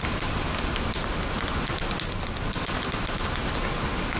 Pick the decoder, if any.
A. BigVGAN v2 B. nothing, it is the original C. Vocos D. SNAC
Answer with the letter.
B